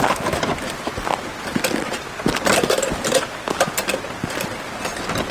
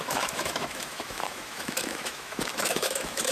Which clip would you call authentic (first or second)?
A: first